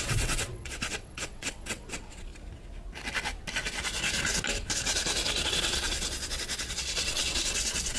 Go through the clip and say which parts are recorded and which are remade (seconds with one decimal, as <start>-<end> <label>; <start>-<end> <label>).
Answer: 0.0-2.3 remade; 2.3-5.5 recorded; 5.5-8.0 remade